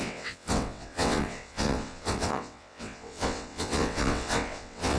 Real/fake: fake